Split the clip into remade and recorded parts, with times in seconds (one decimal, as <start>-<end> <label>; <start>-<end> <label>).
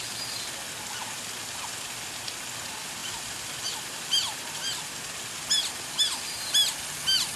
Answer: 0.0-3.0 recorded; 3.0-4.5 remade; 4.5-7.4 recorded